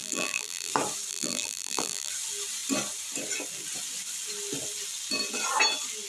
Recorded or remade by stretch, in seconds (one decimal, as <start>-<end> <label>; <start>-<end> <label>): 0.0-0.7 remade; 0.7-1.1 recorded; 1.1-2.1 remade; 2.1-6.1 recorded